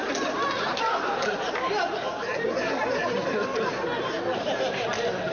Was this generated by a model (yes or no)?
no